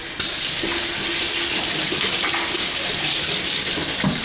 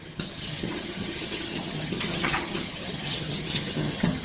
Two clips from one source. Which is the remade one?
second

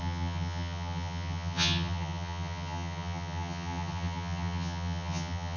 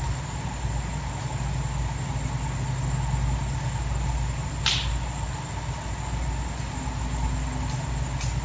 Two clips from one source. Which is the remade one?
first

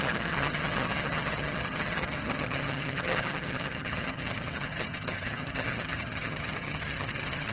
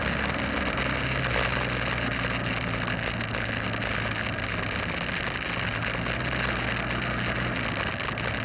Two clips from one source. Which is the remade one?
first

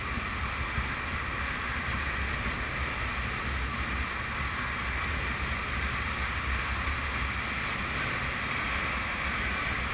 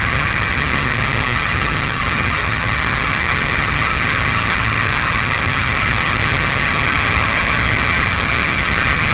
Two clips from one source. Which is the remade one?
second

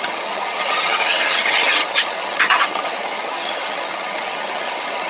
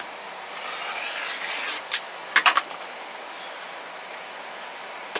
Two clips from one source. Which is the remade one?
first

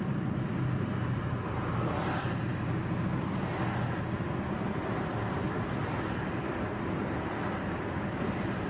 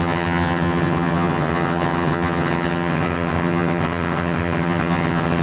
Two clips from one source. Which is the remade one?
second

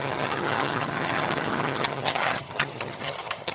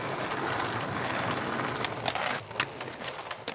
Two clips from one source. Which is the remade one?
first